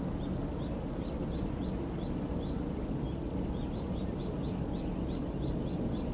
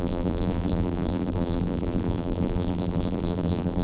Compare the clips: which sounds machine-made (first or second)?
second